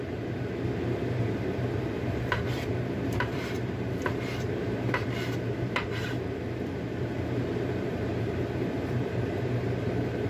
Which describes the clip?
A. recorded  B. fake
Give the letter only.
B